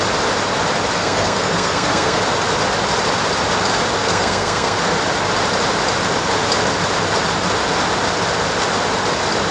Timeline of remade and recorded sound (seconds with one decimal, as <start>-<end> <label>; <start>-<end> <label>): 0.0-1.0 recorded; 1.0-2.2 remade; 2.2-4.0 recorded; 4.0-4.8 remade; 4.8-9.5 recorded